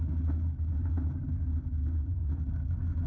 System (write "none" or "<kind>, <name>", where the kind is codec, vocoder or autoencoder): none